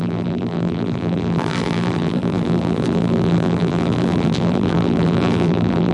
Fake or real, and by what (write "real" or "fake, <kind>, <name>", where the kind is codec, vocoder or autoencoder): fake, vocoder, BigVGAN v2